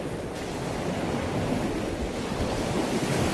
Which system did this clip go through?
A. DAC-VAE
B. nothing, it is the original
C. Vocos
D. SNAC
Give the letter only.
B